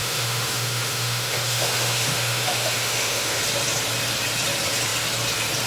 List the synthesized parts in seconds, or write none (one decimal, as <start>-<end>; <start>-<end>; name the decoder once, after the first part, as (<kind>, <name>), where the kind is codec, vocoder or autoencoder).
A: 0.0-3.4 (autoencoder, DAC-VAE)